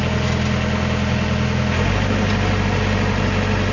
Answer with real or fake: real